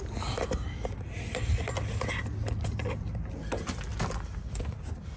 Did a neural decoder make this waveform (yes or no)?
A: no